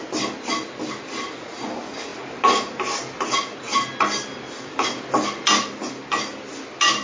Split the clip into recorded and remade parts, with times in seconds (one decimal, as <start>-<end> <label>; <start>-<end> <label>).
0.0-7.0 recorded

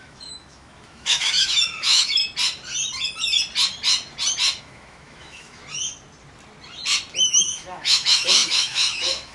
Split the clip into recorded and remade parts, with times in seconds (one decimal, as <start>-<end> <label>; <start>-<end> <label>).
0.0-2.2 remade; 2.2-4.6 recorded; 4.6-5.6 remade; 5.6-7.2 recorded; 7.2-9.3 remade

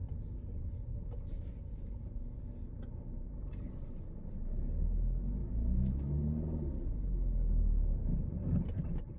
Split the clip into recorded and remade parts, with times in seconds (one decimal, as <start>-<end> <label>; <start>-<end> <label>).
0.0-5.4 recorded; 5.4-6.1 remade; 6.1-9.2 recorded

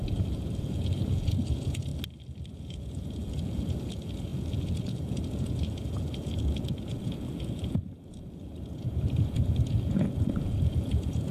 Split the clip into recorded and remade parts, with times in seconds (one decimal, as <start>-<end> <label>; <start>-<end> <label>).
0.0-1.9 remade; 1.9-2.5 recorded; 2.5-11.3 remade

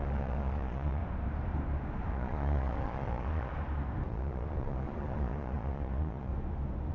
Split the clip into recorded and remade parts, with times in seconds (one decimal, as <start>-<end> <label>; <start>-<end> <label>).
0.0-1.0 remade; 1.0-2.1 recorded; 2.1-3.5 remade; 3.5-4.1 recorded; 4.1-6.3 remade; 6.3-6.9 recorded

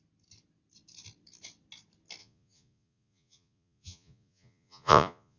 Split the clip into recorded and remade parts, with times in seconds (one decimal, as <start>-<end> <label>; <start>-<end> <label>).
0.0-2.2 recorded; 2.2-5.4 remade

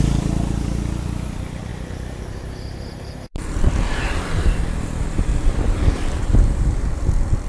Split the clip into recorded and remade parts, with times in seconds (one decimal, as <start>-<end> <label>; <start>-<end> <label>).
0.0-7.5 remade